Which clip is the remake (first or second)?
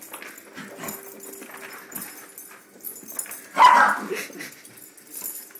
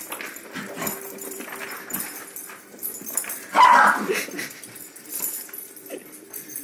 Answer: second